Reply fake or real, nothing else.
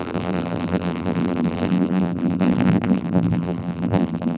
fake